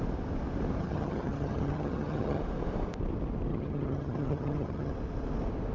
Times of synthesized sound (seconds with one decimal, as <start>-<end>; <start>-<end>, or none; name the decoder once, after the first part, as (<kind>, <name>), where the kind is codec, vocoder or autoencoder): 0.8-2.4 (vocoder, HiFi-GAN); 3.5-4.9

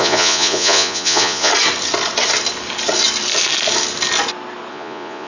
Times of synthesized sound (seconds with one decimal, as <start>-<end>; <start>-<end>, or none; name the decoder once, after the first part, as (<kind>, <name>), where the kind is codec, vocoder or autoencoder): 0.0-1.5 (vocoder, Vocos); 4.7-5.3

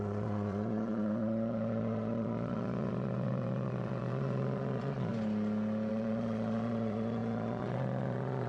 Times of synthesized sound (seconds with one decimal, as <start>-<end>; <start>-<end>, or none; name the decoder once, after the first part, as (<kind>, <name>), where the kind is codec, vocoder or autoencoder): 0.0-5.1 (vocoder, Vocos); 5.9-8.5

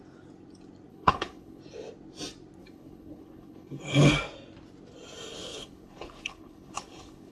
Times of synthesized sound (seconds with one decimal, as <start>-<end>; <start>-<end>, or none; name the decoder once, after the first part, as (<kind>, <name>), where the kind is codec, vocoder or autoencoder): 0.9-1.6 (codec, HILCodec); 2.6-4.1; 5.3-7.3

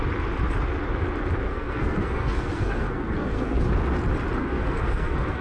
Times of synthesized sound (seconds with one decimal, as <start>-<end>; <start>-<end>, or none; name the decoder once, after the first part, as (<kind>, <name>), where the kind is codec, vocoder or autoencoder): 1.5-3.6 (codec, SNAC); 4.4-5.4